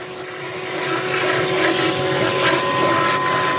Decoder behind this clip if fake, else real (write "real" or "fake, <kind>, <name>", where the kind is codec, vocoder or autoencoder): real